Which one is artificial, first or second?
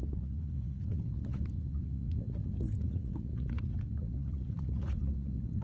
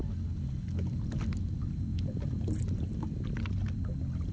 first